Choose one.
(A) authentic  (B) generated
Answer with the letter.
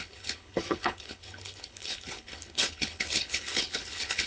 B